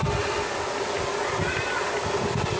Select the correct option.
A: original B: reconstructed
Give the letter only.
A